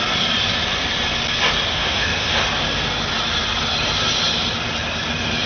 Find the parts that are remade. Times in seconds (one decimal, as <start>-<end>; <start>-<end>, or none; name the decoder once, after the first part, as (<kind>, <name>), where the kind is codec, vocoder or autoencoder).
1.7-2.3 (autoencoder, DAC-VAE)